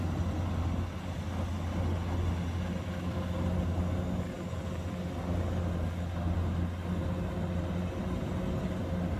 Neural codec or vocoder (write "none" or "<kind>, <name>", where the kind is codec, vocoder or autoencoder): none